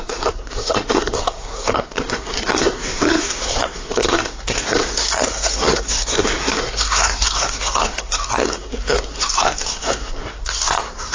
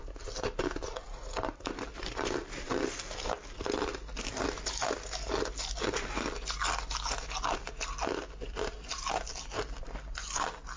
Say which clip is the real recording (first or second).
second